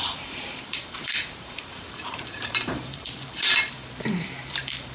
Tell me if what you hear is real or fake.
fake